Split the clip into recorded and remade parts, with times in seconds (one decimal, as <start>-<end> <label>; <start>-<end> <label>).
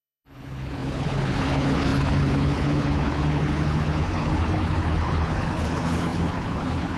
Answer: 0.0-7.0 remade